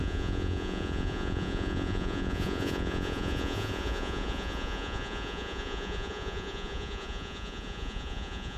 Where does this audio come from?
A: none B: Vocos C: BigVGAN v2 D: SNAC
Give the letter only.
B